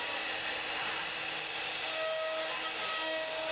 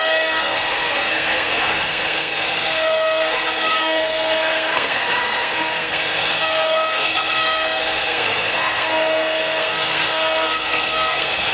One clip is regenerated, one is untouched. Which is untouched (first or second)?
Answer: first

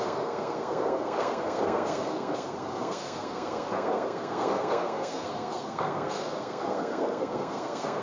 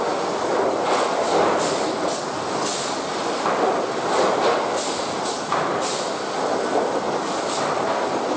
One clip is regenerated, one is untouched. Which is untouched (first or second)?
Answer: second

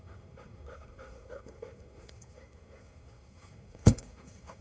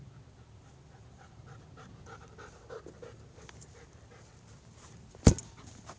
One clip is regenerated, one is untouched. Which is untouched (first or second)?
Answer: second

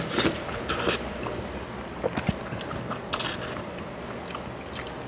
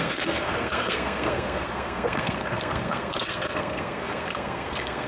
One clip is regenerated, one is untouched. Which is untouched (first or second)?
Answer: first